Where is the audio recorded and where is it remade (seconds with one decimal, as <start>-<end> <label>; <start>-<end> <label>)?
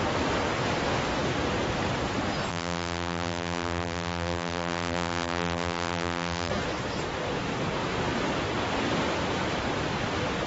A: 0.0-2.5 recorded; 2.5-6.5 remade; 6.5-10.5 recorded